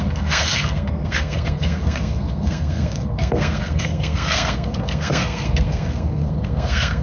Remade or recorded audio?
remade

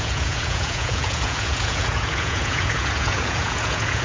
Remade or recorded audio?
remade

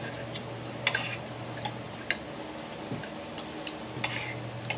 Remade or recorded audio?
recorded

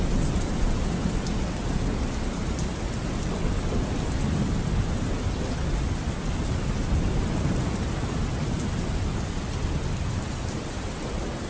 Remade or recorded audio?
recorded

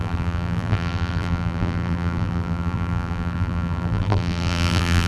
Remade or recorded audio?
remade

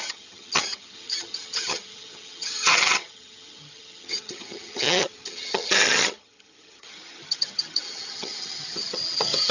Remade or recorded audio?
remade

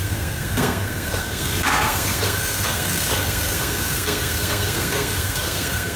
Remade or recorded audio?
remade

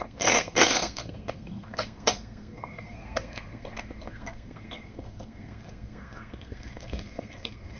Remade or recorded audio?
remade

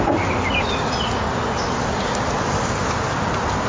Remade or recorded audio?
recorded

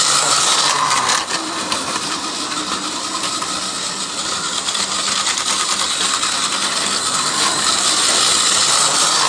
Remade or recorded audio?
recorded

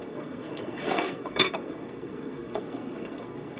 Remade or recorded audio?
remade